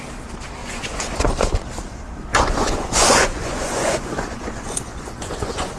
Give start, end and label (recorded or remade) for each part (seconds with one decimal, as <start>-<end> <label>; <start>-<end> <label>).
0.0-0.6 recorded; 0.6-1.3 remade; 1.3-2.3 recorded; 2.3-5.8 remade